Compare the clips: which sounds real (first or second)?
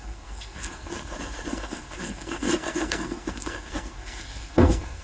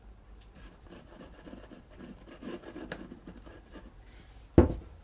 second